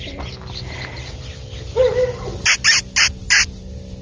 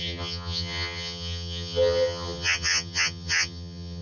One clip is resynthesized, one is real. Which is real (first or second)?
first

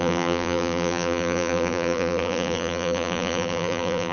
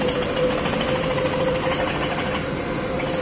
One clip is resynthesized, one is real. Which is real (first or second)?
second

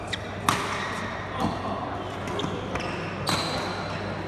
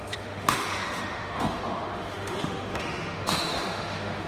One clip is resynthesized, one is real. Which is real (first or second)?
first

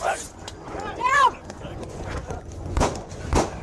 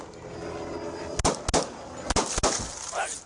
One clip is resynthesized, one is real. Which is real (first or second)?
second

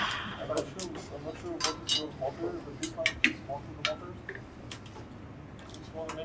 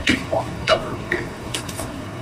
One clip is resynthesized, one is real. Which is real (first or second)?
first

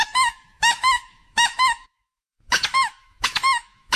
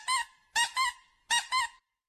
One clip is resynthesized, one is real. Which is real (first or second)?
second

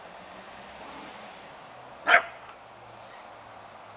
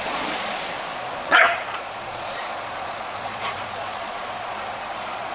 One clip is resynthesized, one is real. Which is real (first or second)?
first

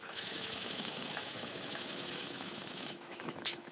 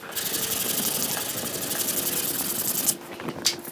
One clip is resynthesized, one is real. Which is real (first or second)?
second